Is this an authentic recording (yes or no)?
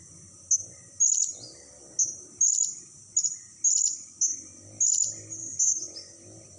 yes